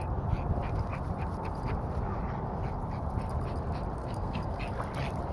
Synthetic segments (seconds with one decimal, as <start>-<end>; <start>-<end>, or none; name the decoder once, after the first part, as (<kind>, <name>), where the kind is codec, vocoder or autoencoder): 4.0-4.6 (codec, SNAC)